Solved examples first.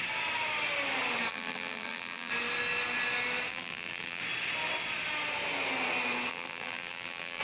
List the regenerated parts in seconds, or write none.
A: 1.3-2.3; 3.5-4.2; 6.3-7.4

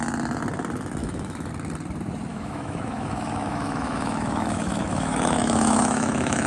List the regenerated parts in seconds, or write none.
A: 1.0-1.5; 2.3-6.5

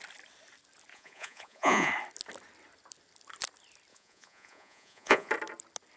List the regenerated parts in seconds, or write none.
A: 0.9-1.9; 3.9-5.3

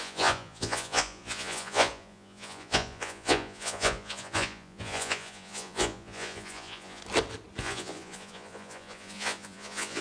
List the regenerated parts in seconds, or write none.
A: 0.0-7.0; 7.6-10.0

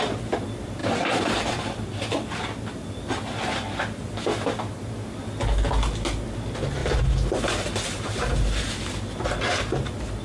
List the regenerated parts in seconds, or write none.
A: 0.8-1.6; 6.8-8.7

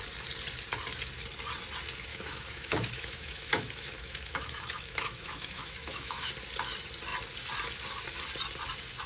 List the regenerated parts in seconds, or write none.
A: 2.1-6.3

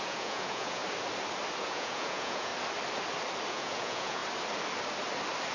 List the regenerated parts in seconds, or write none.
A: 0.0-0.8; 1.6-2.5; 3.5-4.2